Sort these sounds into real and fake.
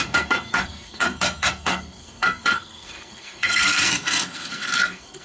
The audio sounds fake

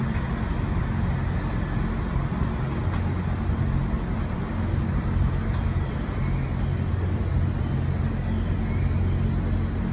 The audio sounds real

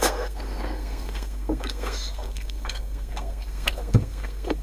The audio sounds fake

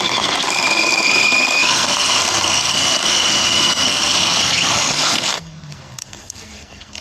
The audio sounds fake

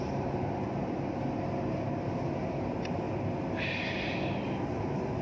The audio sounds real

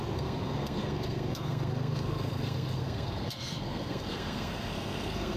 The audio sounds fake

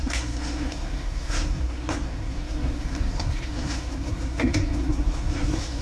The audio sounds fake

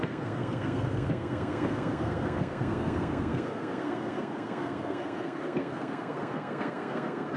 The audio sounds fake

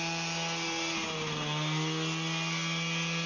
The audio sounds real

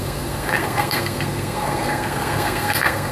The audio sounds fake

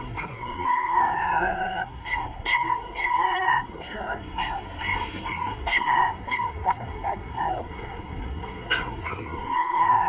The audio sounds fake